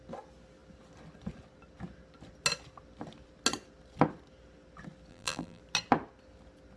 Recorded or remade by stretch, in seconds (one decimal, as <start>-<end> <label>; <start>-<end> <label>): 0.0-5.1 recorded; 5.1-5.6 remade; 5.6-6.8 recorded